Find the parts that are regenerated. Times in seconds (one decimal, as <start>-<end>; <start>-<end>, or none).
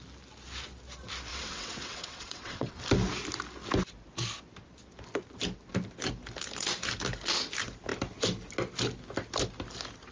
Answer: 1.3-2.8